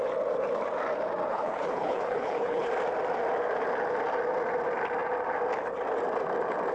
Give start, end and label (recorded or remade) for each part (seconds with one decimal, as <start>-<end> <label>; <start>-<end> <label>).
0.0-1.3 recorded; 1.3-2.7 remade; 2.7-6.7 recorded